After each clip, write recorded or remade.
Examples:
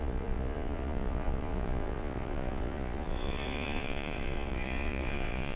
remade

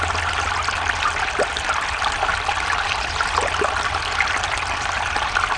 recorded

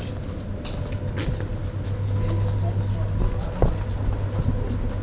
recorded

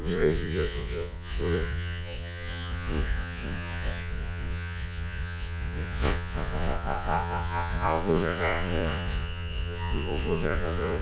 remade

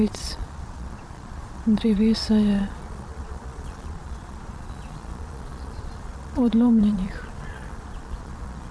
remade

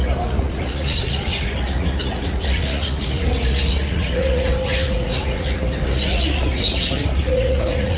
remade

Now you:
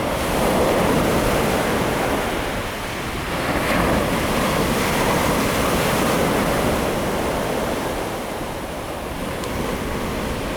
recorded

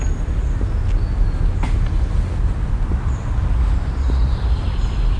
recorded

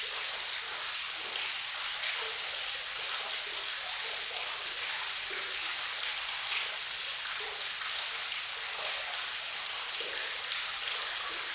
recorded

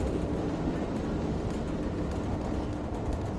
recorded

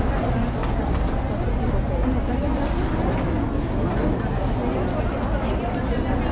recorded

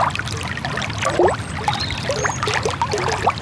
recorded